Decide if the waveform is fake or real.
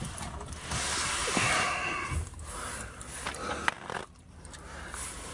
real